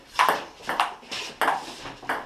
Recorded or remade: recorded